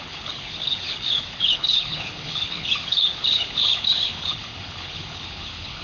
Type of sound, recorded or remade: remade